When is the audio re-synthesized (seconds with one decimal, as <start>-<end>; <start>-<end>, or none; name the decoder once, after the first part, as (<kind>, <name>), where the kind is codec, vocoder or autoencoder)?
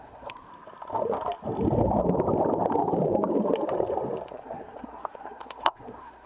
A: 0.0-0.5 (codec, SNAC); 4.3-6.3